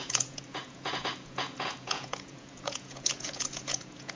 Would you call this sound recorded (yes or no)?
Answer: no